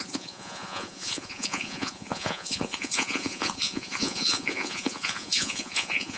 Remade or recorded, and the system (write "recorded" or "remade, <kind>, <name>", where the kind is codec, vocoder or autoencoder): remade, vocoder, Vocos